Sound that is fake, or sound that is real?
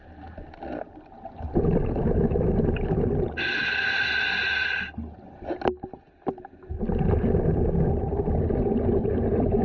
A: real